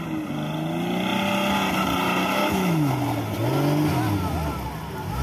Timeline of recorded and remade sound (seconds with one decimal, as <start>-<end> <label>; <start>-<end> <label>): 0.0-2.4 recorded; 2.4-2.9 remade; 2.9-5.2 recorded